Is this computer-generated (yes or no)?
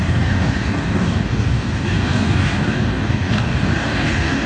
yes